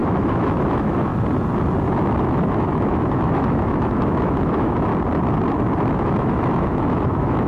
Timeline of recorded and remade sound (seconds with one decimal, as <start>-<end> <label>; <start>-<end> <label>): 0.0-1.1 remade; 1.1-2.2 recorded; 2.2-4.9 remade; 4.9-5.9 recorded; 5.9-7.5 remade